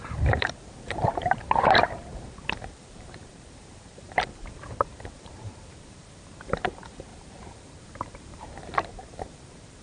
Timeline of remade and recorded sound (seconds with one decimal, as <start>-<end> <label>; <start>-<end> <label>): 0.0-9.8 remade